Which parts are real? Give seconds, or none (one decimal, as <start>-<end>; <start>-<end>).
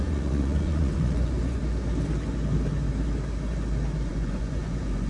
1.6-4.1